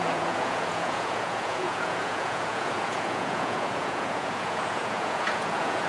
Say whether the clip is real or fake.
fake